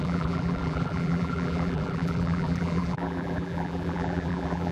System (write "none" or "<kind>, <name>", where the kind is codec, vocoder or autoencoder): vocoder, BigVGAN v2